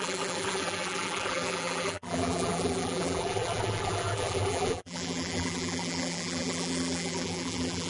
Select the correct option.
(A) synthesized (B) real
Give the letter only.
A